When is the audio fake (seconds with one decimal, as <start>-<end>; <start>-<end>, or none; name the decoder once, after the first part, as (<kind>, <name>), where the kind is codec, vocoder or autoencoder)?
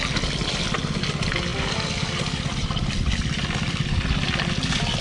none